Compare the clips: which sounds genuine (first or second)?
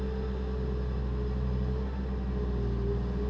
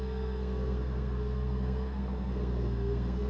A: first